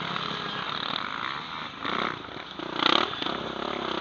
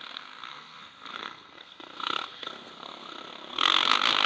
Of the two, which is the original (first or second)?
first